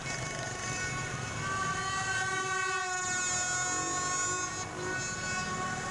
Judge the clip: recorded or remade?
recorded